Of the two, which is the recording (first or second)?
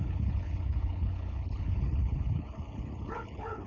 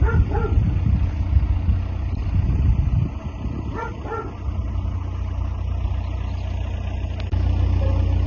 second